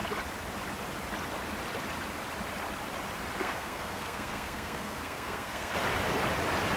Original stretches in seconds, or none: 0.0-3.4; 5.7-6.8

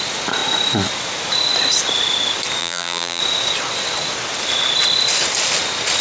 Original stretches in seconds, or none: 0.0-2.6; 3.2-6.0

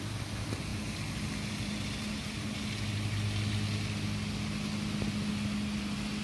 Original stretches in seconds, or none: 0.0-6.2

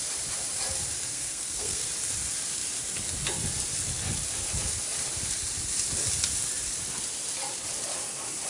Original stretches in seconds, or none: 0.0-1.1; 1.9-8.5

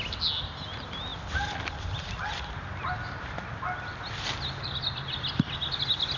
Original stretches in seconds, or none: 0.0-6.2

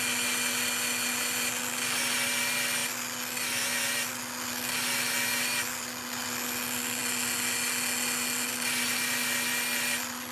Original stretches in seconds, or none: 0.0-10.3

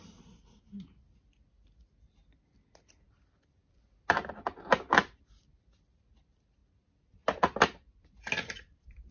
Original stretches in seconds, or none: 0.0-9.1